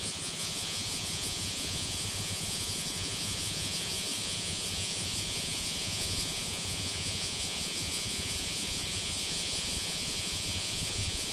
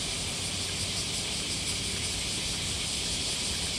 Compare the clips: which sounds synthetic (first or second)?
first